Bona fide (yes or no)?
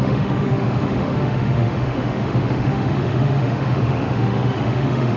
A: no